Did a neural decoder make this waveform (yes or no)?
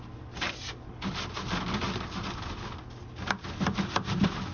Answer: no